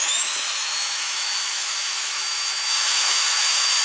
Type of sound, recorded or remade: remade